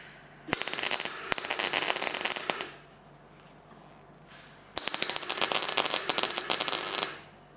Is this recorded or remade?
recorded